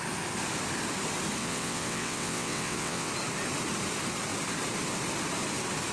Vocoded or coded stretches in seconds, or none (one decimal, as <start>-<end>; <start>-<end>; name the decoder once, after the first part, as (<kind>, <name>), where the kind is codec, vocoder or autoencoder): 1.4-3.1 (vocoder, WaveNeXt)